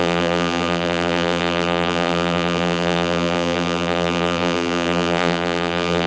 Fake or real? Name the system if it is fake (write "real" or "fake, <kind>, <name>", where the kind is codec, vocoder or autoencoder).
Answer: fake, vocoder, BigVGAN v2